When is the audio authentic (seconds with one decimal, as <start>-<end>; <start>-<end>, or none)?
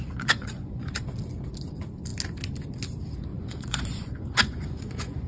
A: 0.9-3.3